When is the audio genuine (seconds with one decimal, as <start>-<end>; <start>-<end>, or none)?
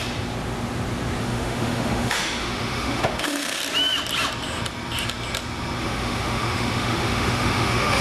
0.0-1.2; 3.6-5.8